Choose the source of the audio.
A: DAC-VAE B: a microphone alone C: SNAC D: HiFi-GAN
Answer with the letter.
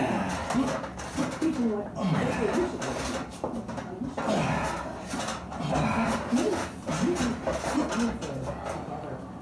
B